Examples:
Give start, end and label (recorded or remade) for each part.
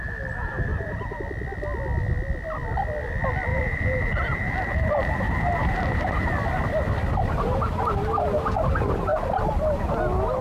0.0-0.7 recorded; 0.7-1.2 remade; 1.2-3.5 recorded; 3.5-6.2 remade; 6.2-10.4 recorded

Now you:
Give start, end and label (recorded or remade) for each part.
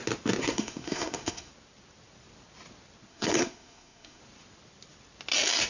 0.0-0.4 recorded; 0.4-1.5 remade; 1.5-3.1 recorded; 3.1-4.2 remade; 4.2-5.7 recorded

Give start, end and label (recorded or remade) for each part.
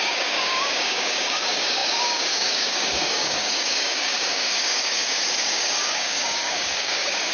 0.0-7.3 remade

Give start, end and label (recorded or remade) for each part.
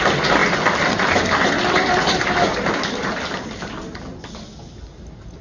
0.0-5.4 recorded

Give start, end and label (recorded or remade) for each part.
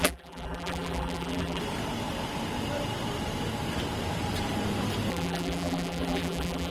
0.0-1.6 remade; 1.6-5.1 recorded; 5.1-6.7 remade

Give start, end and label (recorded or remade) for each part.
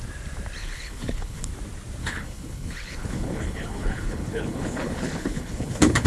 0.0-0.6 recorded; 0.6-1.5 remade; 1.5-2.0 recorded; 2.0-6.1 remade